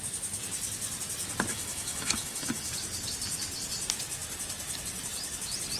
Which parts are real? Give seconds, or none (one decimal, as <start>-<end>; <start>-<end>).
0.0-1.5; 2.7-5.8